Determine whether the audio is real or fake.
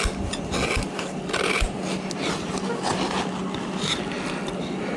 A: real